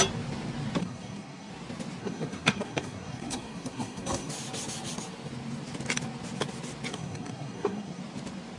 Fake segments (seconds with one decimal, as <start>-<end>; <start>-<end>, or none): 0.8-1.5; 2.0-4.3; 6.9-8.0